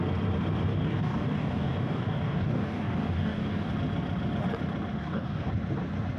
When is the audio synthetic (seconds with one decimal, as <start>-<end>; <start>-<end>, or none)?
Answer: 0.7-3.7; 5.0-5.5